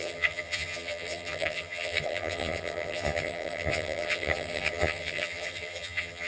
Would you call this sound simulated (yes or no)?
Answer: yes